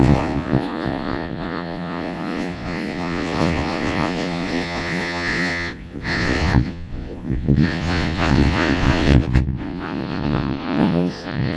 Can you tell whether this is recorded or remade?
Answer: remade